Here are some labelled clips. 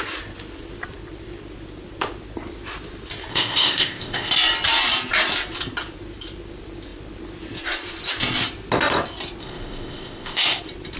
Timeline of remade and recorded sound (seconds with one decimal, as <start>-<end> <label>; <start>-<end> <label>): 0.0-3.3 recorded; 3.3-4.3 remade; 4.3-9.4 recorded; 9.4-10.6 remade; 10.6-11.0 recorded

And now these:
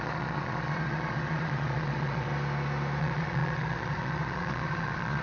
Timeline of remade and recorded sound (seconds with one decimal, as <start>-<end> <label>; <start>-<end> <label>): 0.0-2.3 remade; 2.3-3.0 recorded; 3.0-5.2 remade

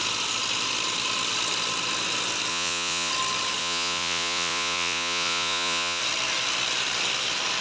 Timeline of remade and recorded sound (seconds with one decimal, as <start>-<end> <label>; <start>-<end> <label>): 0.0-2.5 recorded; 2.5-3.1 remade; 3.1-3.6 recorded; 3.6-6.0 remade; 6.0-7.6 recorded

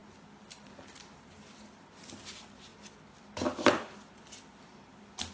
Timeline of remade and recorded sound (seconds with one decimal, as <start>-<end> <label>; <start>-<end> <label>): 0.0-5.3 recorded

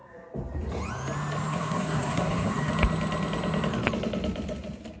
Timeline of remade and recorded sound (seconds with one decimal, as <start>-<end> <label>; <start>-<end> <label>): 0.0-1.5 recorded; 1.5-2.7 remade; 2.7-5.0 recorded